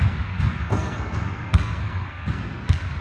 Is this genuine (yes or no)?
no